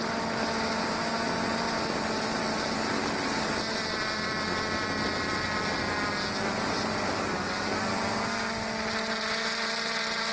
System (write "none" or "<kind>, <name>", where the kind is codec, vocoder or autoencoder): none